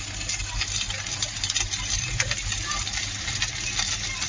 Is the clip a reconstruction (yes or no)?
no